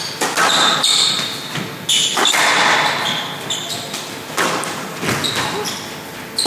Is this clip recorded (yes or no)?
yes